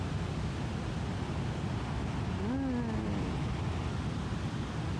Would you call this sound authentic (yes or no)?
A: yes